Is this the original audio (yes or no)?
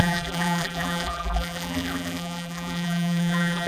no